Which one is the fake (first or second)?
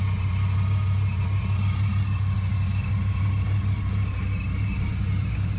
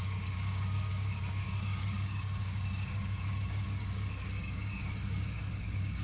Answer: second